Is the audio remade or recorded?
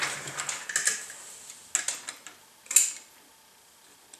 recorded